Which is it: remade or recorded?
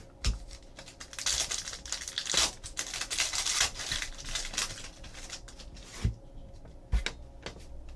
recorded